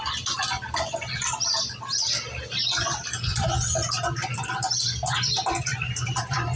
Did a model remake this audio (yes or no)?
no